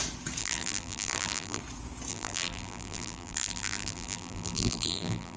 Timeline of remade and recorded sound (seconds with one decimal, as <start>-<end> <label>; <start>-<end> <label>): 0.0-0.4 recorded; 0.4-1.6 remade; 1.6-2.1 recorded; 2.1-5.4 remade